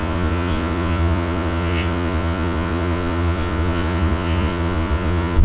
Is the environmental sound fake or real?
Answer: fake